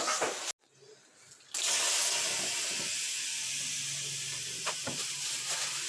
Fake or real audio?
real